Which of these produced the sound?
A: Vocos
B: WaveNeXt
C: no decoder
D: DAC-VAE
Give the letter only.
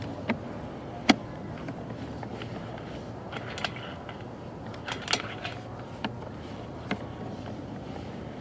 C